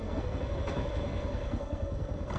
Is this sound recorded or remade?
remade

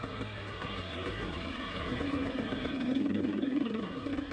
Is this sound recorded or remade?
remade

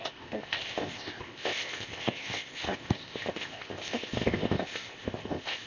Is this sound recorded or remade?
remade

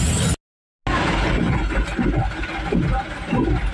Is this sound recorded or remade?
recorded